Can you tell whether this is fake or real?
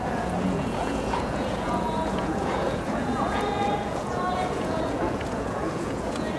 fake